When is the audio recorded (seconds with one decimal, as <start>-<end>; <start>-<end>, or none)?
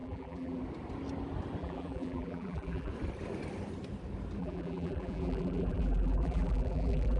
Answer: 0.6-1.6; 2.9-4.4